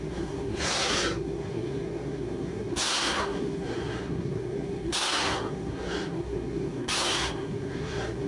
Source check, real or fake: fake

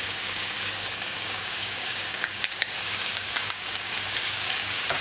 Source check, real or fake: fake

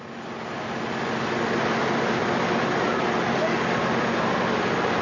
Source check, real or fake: real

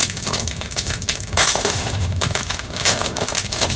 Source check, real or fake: fake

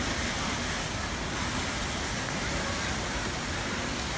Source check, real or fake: real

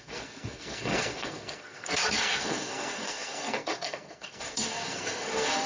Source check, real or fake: fake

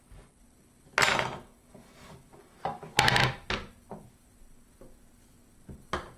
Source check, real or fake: real